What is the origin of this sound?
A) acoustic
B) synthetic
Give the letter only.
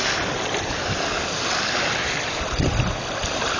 A